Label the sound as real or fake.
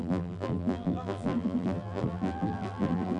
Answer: fake